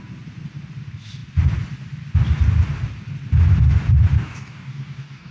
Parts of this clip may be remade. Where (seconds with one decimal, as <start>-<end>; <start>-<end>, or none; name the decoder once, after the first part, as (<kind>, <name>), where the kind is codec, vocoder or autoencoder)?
4.1-5.3 (codec, DAC)